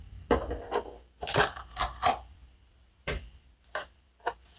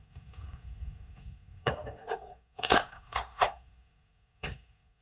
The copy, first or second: second